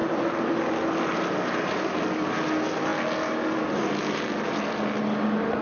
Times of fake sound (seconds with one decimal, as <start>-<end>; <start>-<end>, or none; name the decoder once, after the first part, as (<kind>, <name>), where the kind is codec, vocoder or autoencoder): none